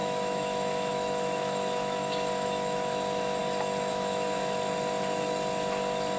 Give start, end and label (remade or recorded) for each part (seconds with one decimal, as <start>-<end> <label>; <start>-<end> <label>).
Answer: 0.0-3.4 remade; 3.4-3.9 recorded; 3.9-4.4 remade; 4.4-6.2 recorded